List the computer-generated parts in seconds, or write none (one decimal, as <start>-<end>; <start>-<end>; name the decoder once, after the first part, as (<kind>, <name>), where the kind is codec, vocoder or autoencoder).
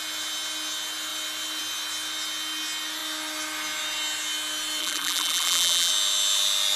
4.8-5.9 (vocoder, BigVGAN v2)